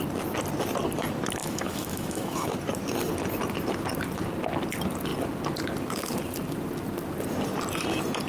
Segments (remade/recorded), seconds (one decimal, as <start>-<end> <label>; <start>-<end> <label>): 0.0-1.4 recorded; 1.4-2.5 remade; 2.5-8.3 recorded